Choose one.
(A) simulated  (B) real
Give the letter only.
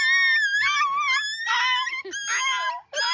B